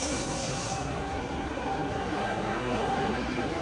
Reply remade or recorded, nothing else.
remade